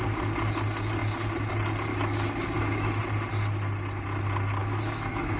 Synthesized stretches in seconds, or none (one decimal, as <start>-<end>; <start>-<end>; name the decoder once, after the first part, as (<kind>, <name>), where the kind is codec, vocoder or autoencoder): 1.9-3.0 (autoencoder, DAC-VAE); 4.6-5.4